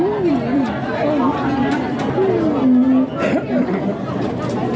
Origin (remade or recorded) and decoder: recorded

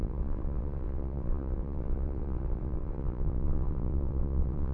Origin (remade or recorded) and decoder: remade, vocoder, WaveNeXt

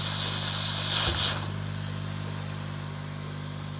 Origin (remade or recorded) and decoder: recorded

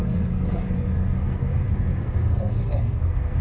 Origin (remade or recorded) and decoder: remade, codec, SNAC